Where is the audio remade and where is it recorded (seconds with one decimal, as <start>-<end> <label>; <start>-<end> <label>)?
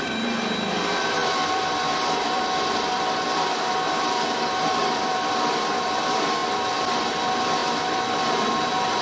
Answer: 0.0-9.0 remade